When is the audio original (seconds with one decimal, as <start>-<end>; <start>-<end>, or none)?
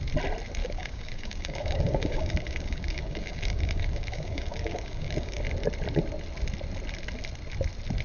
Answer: 0.0-0.6; 5.4-8.0